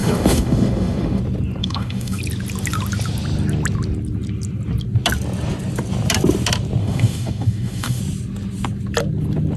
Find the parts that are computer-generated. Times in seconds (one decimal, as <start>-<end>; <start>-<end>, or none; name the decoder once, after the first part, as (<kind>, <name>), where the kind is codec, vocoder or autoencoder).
0.0-1.2 (autoencoder, DAC-VAE); 1.6-2.2; 6.8-8.0